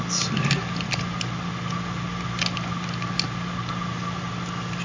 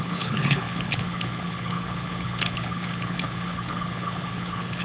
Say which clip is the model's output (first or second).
second